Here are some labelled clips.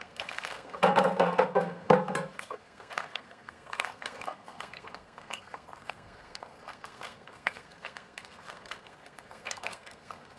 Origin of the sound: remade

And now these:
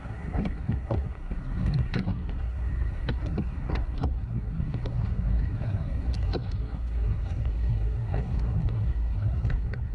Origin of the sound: remade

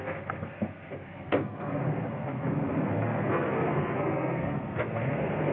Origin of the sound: remade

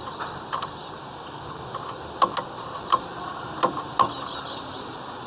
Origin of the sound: recorded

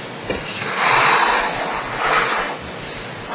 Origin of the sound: recorded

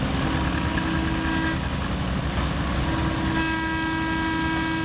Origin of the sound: recorded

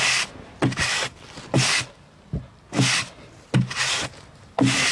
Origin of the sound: recorded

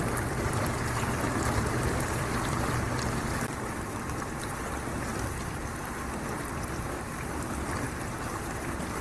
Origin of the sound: recorded